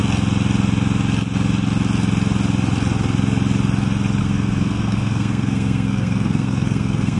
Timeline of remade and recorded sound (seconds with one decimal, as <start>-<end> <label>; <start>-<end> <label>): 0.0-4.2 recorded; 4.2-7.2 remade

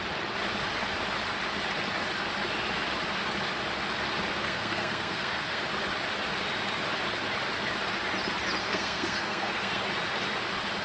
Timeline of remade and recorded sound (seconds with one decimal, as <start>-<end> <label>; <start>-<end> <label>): 0.0-4.3 recorded; 4.3-5.6 remade; 5.6-8.6 recorded; 8.6-9.8 remade; 9.8-10.8 recorded

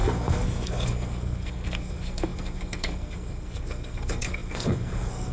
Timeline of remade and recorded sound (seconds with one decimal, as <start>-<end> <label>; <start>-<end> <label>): 0.0-5.3 remade